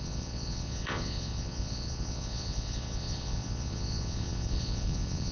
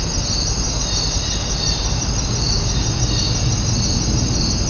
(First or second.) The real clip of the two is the second